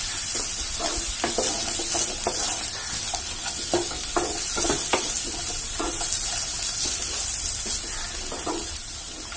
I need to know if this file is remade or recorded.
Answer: recorded